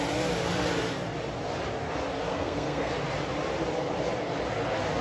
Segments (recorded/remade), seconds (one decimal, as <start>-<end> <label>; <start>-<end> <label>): 0.0-2.3 recorded; 2.3-2.9 remade; 2.9-5.0 recorded